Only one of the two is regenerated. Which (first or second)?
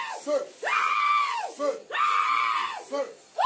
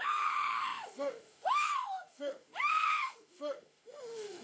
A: second